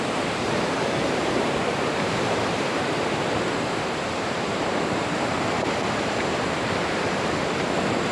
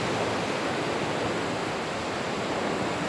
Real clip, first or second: second